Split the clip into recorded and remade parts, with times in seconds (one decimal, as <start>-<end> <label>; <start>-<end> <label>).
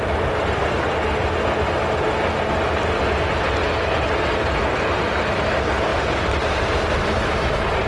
0.0-7.9 recorded